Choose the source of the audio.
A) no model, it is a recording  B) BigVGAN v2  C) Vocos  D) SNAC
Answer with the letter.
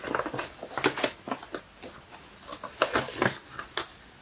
A